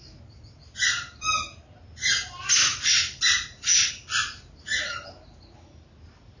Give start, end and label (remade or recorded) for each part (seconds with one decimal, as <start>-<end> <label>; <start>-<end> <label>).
0.0-6.4 recorded